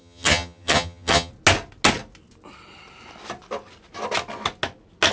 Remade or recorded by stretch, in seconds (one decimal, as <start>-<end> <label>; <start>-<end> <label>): 0.0-1.3 remade; 1.3-5.1 recorded